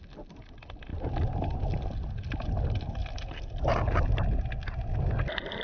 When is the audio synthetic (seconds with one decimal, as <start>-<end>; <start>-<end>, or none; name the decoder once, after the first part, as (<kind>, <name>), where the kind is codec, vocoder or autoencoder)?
0.9-2.3 (vocoder, BigVGAN v2)